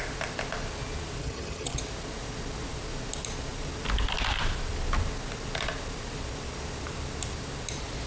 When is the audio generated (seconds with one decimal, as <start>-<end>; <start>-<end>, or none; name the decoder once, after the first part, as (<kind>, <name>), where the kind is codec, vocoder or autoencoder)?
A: 1.2-1.8 (vocoder, HiFi-GAN)

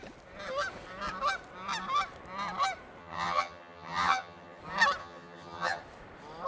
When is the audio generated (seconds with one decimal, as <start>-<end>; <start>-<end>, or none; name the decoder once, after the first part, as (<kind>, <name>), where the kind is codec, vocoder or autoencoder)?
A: 3.0-4.6 (vocoder, HiFi-GAN); 5.0-5.8

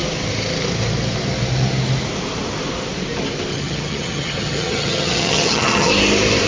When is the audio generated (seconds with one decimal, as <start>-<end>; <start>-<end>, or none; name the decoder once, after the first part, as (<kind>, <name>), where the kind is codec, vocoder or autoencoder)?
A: 3.5-5.9 (vocoder, HiFi-GAN)

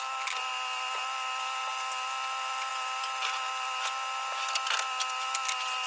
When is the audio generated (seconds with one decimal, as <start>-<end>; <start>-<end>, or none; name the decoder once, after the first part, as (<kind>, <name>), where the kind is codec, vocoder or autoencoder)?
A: none

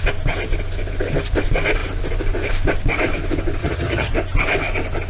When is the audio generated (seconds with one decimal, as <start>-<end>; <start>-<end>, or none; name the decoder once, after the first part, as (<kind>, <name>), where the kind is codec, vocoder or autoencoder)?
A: 3.6-4.1 (vocoder, HiFi-GAN)